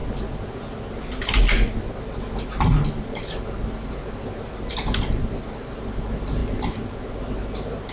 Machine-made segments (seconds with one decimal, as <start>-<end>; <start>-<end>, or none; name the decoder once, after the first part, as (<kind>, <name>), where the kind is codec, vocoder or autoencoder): none